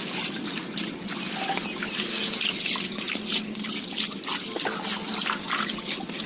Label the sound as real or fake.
real